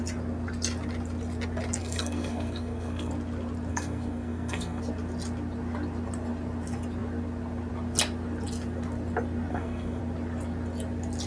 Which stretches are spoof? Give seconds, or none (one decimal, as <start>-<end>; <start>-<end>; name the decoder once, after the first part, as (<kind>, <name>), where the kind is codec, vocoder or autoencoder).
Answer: 1.8-3.1 (codec, SNAC); 3.7-4.8; 9.5-10.0